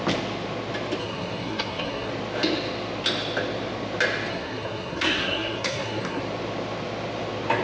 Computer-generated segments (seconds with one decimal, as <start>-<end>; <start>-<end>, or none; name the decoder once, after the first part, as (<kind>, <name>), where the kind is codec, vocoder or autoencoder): 1.0-2.1 (codec, SNAC); 4.3-6.2

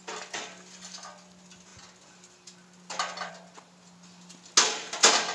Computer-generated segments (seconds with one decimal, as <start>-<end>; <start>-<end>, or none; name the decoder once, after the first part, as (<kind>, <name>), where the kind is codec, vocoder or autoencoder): none

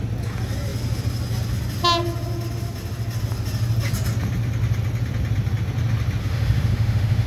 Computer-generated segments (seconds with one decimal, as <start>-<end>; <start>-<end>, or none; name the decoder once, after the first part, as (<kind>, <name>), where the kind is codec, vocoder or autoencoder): 6.2-7.3 (autoencoder, DAC-VAE)